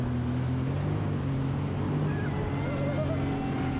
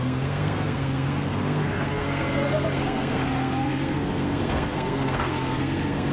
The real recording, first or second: first